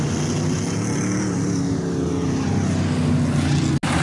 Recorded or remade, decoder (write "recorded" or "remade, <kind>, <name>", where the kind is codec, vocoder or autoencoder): recorded